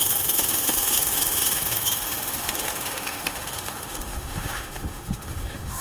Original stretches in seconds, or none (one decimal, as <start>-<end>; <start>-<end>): none